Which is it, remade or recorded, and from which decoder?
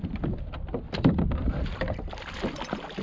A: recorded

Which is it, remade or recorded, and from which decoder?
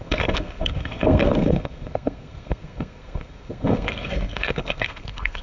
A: remade, codec, SNAC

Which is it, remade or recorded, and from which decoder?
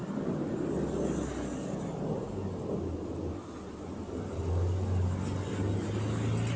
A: recorded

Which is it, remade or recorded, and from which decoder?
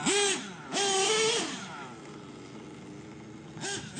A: recorded